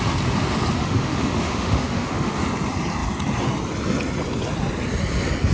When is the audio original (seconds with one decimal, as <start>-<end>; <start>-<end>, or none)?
0.0-0.8; 2.4-5.5